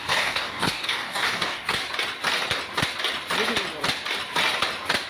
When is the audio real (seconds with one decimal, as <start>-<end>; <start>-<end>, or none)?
1.8-5.1